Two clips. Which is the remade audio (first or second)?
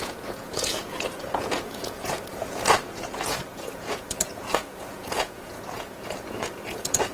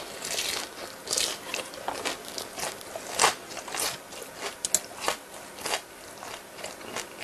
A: first